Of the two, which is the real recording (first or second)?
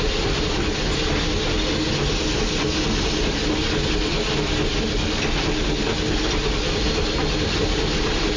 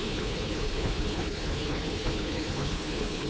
first